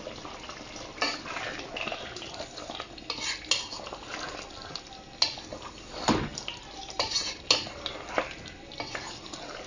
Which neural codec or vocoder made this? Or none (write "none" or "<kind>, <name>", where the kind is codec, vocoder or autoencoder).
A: none